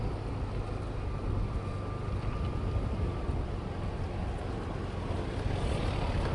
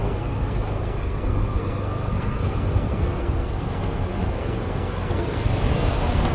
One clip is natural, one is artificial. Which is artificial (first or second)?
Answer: second